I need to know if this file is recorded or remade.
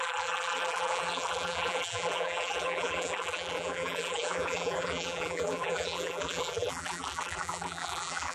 remade